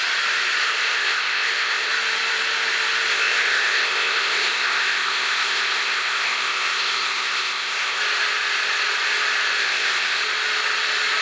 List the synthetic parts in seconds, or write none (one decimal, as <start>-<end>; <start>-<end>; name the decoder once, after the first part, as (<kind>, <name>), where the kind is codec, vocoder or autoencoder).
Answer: 0.6-1.9 (codec, ZipCodec); 3.1-8.0; 9.6-10.2